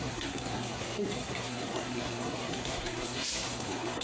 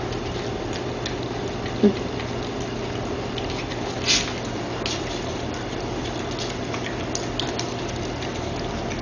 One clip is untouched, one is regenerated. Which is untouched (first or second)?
second